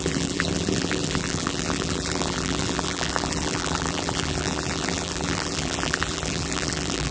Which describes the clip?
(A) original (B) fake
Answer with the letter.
B